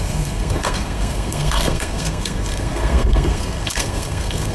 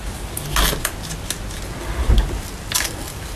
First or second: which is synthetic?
first